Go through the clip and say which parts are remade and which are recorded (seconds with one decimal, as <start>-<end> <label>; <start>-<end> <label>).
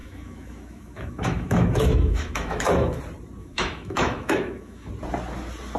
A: 0.0-3.0 remade; 3.0-3.4 recorded; 3.4-4.9 remade; 4.9-5.8 recorded